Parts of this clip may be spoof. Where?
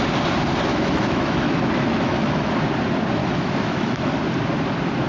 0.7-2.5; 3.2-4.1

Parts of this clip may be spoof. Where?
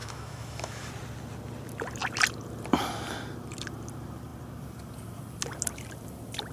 0.0-0.9